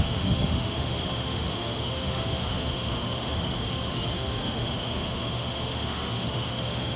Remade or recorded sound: remade